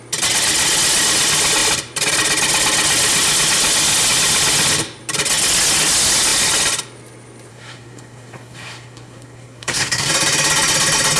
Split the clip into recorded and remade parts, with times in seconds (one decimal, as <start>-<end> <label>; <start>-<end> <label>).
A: 0.0-7.5 recorded; 7.5-10.1 remade; 10.1-11.2 recorded